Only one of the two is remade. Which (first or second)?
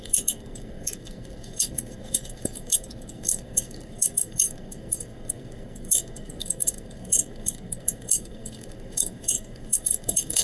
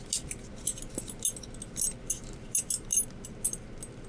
first